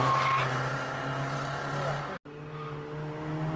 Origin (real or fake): real